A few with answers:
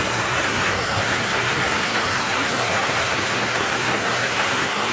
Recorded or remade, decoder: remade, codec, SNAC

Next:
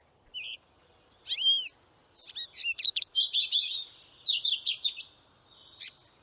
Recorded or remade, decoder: recorded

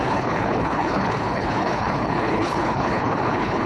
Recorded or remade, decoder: remade, codec, HILCodec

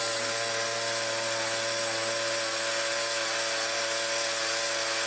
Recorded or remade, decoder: recorded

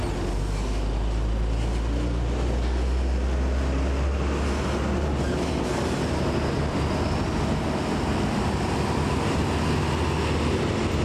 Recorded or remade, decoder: recorded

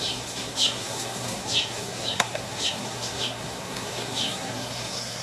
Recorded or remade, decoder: remade, codec, SNAC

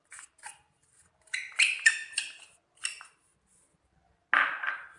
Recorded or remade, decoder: recorded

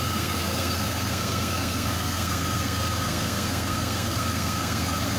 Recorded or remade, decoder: remade, codec, SNAC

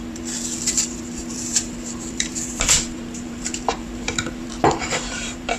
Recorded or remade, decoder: remade, vocoder, BigVGAN v2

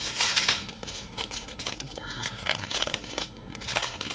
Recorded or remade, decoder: remade, codec, SNAC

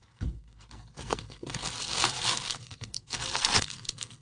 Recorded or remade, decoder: remade, codec, SNAC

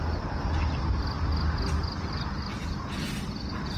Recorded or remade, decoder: recorded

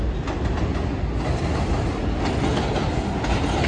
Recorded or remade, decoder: recorded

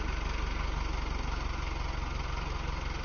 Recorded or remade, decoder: recorded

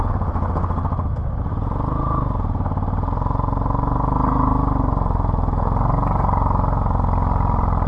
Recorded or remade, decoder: recorded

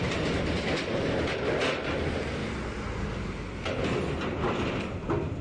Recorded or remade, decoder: recorded